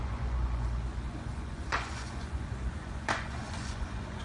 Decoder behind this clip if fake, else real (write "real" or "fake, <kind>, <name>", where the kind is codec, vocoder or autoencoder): fake, vocoder, Vocos